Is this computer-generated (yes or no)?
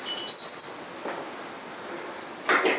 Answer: no